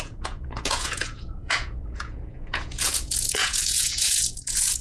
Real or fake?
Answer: fake